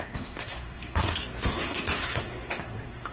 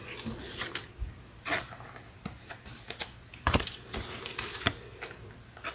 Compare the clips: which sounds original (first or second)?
second